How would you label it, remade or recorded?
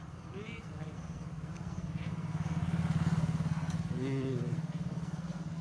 remade